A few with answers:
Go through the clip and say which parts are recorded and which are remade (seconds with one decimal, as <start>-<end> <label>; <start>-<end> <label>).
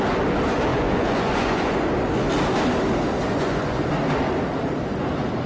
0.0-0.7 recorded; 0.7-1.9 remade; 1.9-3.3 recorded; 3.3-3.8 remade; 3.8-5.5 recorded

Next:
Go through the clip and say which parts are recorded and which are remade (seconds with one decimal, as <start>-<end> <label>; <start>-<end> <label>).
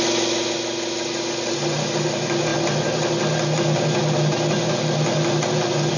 0.0-6.0 recorded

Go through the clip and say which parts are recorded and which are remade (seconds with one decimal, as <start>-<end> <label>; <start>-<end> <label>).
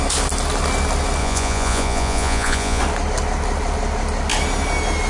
0.0-1.2 recorded; 1.2-2.8 remade; 2.8-5.1 recorded